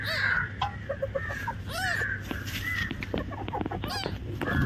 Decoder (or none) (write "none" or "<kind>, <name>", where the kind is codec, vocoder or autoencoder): none